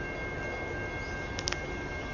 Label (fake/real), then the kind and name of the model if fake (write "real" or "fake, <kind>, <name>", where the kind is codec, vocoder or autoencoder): real